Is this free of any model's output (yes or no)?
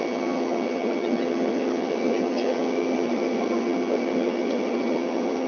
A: no